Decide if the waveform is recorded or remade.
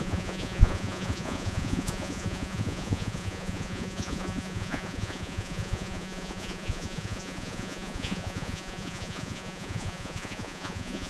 remade